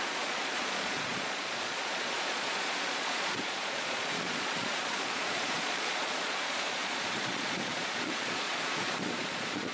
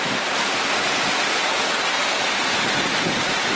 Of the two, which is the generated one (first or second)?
first